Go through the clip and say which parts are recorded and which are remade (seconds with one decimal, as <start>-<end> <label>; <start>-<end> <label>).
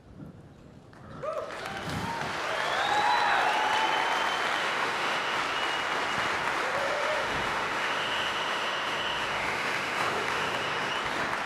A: 0.0-4.6 recorded; 4.6-5.4 remade; 5.4-6.8 recorded; 6.8-10.9 remade; 10.9-11.5 recorded